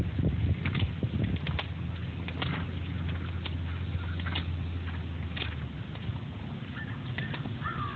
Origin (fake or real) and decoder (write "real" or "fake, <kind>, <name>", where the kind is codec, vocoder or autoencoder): real